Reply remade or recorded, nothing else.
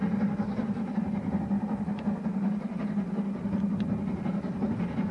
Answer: recorded